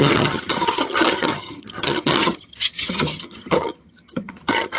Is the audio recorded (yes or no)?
no